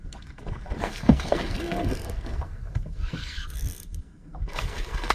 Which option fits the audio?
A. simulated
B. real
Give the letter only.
A